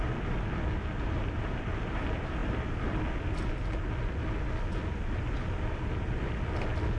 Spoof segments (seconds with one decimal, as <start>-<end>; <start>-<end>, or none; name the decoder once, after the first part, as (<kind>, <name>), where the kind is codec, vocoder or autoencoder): none